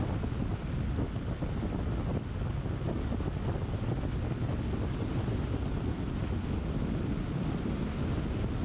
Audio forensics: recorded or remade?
recorded